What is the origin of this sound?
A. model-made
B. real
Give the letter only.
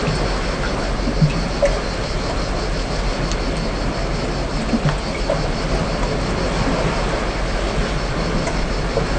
B